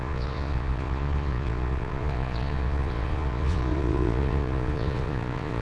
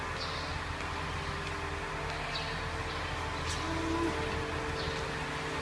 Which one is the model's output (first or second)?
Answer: first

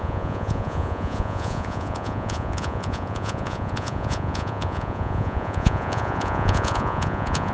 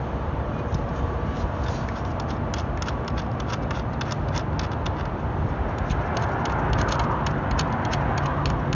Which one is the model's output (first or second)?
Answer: first